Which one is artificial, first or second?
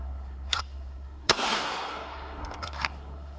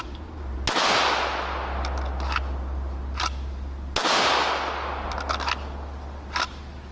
first